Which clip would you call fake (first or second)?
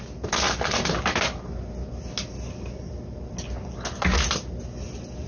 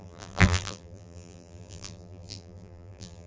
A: second